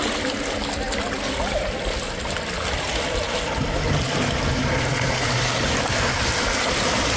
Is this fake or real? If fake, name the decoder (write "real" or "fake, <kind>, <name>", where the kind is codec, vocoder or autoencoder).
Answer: real